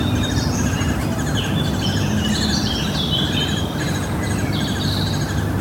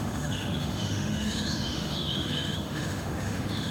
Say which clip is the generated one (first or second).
second